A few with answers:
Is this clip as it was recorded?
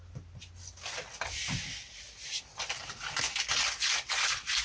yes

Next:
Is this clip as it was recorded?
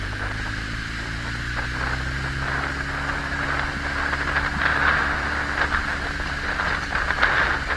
yes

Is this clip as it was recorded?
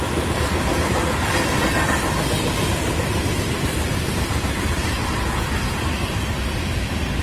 yes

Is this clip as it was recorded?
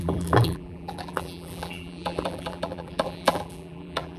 no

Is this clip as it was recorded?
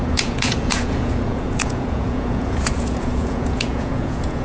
no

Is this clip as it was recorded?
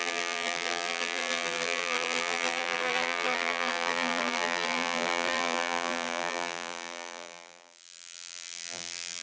no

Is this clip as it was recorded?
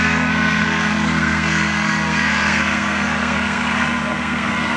no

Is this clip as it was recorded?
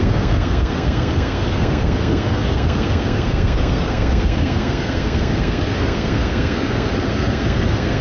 no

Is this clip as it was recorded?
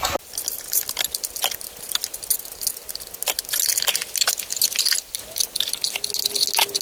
yes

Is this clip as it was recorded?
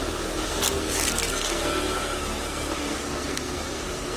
no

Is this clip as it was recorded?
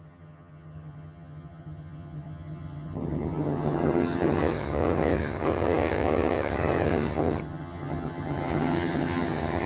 no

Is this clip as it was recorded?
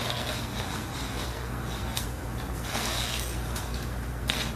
no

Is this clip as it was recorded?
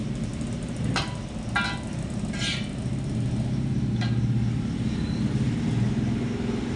yes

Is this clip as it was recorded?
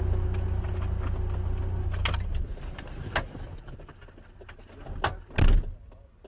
yes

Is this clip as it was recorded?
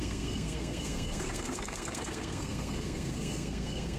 no